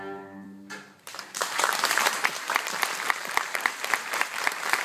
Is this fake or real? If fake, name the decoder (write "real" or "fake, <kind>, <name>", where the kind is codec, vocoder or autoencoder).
fake, vocoder, BigVGAN v2